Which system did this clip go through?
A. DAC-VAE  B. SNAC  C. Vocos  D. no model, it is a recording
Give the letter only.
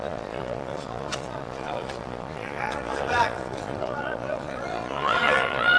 C